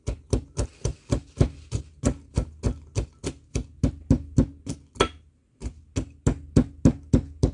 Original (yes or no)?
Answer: yes